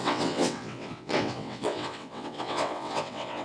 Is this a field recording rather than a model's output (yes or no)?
no